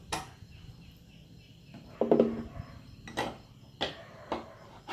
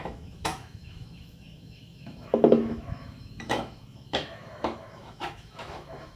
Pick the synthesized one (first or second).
second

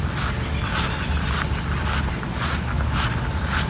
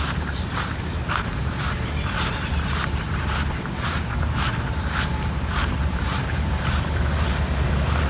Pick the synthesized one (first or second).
second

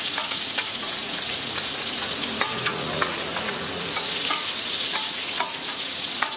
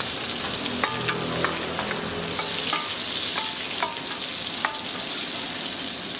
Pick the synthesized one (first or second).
first